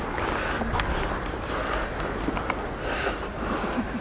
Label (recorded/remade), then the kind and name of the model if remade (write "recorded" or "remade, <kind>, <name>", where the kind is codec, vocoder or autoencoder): recorded